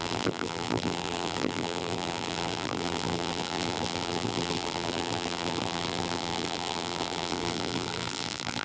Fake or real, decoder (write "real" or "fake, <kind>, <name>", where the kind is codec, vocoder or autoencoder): fake, vocoder, BigVGAN v2